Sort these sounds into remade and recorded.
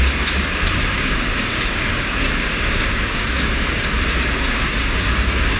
remade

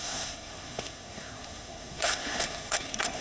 remade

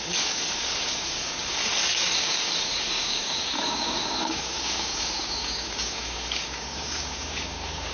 remade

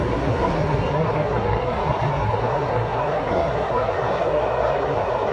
remade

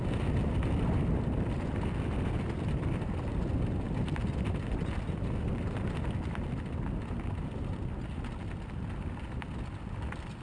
recorded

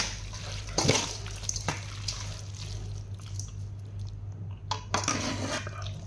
recorded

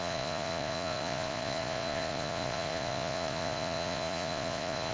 remade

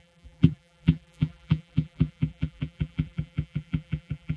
remade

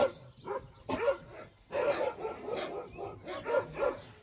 recorded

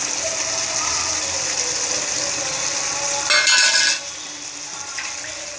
recorded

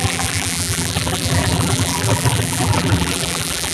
remade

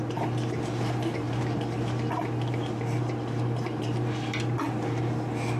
recorded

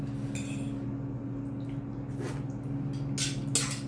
recorded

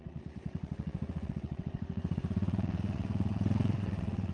remade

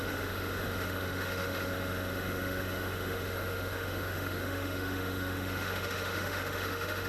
remade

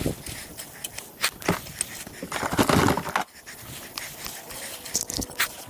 recorded